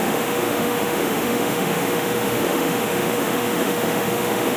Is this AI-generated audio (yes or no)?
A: yes